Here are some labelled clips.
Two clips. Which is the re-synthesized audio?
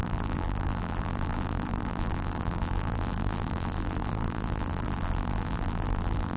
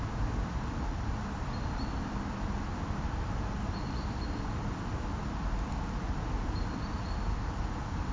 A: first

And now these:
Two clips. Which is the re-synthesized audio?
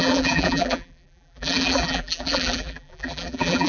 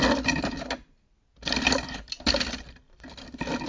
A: first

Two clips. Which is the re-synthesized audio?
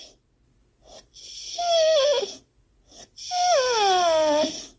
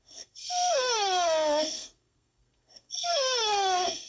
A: second